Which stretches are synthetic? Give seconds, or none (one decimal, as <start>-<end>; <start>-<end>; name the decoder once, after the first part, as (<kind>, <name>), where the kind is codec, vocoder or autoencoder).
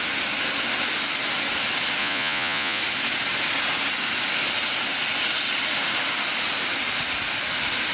2.0-2.8 (vocoder, Vocos)